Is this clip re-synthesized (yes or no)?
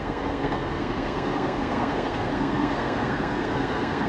yes